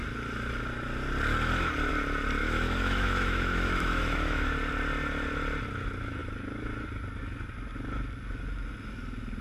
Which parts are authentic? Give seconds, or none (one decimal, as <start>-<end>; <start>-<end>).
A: 0.0-2.4; 4.5-9.4